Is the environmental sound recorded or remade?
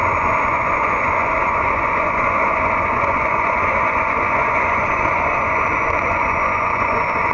remade